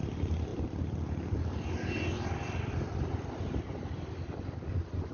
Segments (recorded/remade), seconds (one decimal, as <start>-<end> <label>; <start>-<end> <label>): 0.0-5.1 recorded